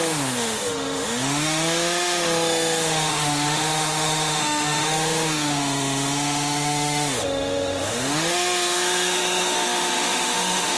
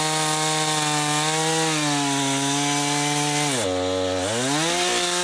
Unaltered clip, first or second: second